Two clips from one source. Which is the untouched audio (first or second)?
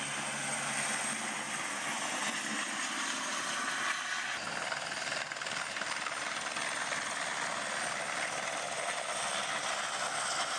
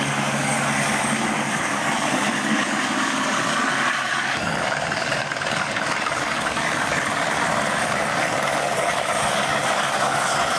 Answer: first